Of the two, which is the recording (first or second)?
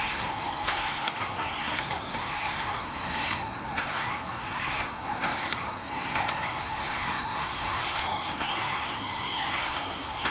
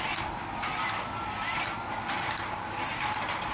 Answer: second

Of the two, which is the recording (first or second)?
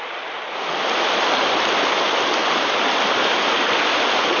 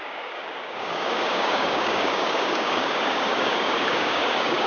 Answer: first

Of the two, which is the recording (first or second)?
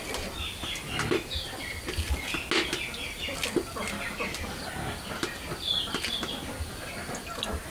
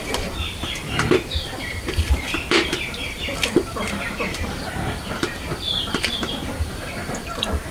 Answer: first